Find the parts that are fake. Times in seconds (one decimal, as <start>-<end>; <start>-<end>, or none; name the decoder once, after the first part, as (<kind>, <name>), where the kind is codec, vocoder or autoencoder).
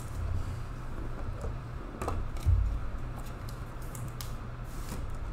1.3-1.8 (vocoder, BigVGAN v2); 2.8-4.2